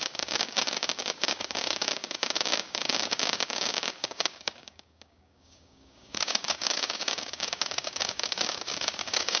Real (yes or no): no